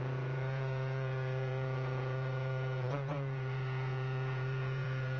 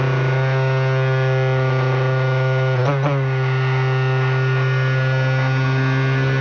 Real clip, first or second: second